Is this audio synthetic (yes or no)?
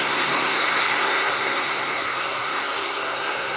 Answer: yes